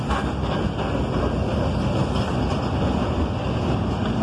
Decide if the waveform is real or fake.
real